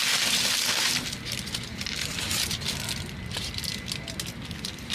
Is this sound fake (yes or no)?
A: no